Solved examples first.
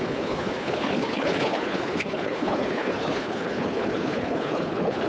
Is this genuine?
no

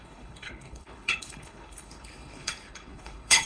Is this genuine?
no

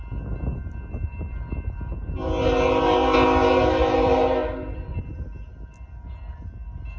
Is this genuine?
yes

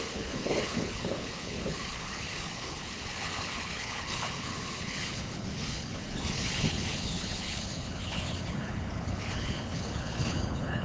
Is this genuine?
no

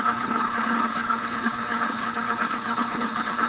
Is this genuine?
no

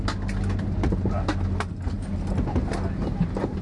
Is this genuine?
yes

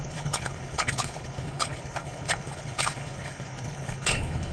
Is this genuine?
no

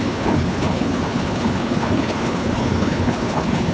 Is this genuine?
no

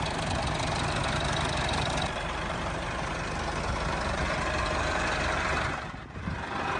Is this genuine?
yes